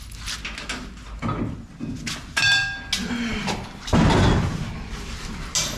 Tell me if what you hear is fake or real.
real